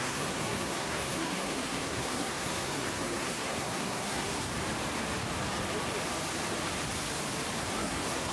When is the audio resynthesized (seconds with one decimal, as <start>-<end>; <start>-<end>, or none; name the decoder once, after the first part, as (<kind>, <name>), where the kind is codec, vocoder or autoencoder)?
0.0-4.5 (codec, SNAC); 7.6-8.3